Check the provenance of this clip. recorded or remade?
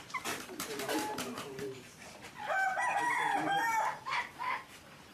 remade